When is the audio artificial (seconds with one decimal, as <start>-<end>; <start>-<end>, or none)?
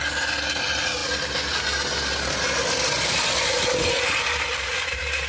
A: none